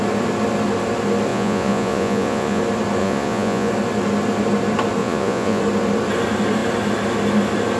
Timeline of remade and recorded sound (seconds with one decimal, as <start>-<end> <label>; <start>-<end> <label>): 0.0-1.3 recorded; 1.3-2.6 remade; 2.6-3.0 recorded; 3.0-3.7 remade; 3.7-5.0 recorded; 5.0-5.6 remade; 5.6-7.8 recorded